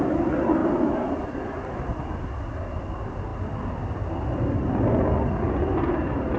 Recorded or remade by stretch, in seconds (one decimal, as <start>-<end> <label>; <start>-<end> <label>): 0.0-6.4 recorded